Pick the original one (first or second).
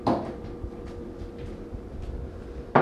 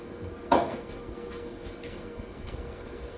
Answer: first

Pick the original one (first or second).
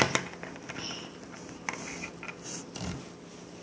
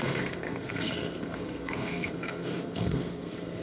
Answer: first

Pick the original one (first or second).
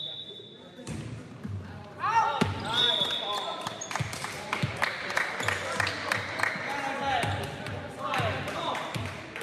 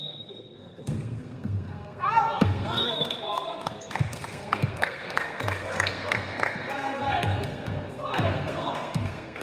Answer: first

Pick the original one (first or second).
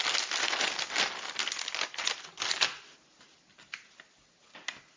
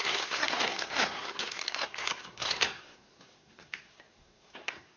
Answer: first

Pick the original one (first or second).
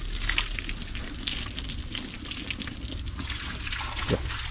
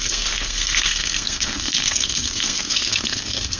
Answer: first